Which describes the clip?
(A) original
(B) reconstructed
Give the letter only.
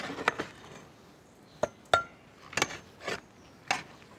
A